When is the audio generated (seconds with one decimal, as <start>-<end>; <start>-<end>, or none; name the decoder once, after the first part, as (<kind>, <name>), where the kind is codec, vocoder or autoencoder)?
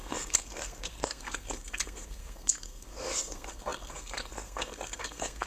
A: 0.0-5.5 (codec, SNAC)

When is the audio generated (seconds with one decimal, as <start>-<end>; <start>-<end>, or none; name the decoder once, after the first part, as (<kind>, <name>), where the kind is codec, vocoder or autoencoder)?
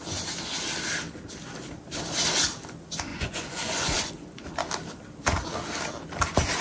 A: 3.1-4.1 (vocoder, Vocos)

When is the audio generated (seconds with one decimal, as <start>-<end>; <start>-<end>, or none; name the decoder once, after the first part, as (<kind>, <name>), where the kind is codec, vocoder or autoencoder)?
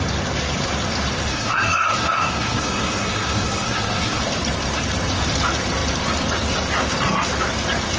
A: 1.3-4.2 (codec, SNAC)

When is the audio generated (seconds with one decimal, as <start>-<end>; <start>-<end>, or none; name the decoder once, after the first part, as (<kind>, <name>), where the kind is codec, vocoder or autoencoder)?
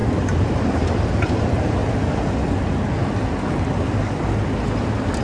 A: 0.0-1.8 (vocoder, BigVGAN v2)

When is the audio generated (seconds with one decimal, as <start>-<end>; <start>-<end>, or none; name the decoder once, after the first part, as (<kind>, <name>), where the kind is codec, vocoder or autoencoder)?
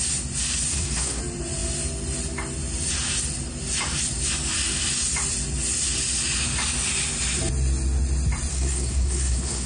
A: 0.7-1.2 (codec, SNAC); 8.5-9.7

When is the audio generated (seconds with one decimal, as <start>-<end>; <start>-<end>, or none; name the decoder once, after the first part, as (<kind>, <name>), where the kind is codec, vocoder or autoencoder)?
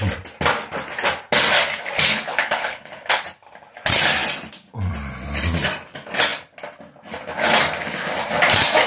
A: 2.1-3.2 (codec, HILCodec)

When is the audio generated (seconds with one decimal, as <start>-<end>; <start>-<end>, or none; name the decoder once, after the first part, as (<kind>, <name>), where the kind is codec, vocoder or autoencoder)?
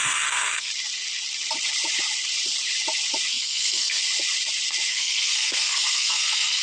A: 0.0-0.7 (codec, SNAC); 3.3-4.0; 4.9-6.6